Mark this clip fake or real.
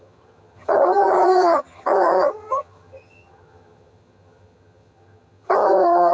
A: fake